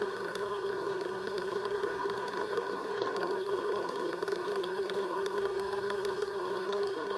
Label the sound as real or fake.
fake